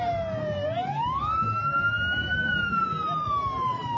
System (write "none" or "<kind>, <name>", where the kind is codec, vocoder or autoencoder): none